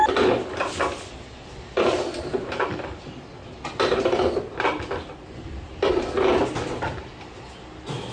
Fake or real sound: real